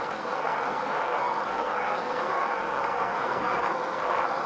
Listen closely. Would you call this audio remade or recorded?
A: remade